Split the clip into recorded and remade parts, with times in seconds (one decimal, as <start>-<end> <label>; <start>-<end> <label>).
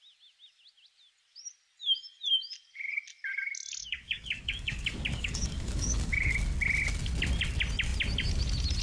0.0-3.8 recorded; 3.8-6.3 remade; 6.3-8.8 recorded